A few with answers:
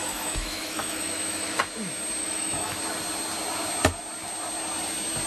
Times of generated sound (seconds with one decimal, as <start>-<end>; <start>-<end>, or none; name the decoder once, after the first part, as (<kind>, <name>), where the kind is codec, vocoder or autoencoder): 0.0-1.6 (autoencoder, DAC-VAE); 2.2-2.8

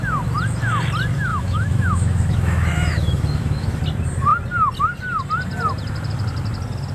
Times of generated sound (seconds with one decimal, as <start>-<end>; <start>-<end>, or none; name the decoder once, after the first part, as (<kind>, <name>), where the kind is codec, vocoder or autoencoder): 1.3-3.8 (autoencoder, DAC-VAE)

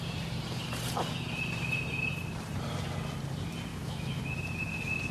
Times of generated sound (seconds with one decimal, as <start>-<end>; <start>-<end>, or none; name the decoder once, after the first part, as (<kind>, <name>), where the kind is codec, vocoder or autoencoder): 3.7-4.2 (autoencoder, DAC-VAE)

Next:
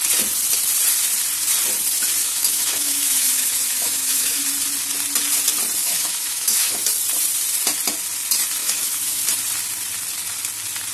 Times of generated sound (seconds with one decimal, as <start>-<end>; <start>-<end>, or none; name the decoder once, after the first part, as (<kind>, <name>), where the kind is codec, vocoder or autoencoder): 2.2-4.4 (autoencoder, DAC-VAE); 5.8-6.8; 8.6-9.2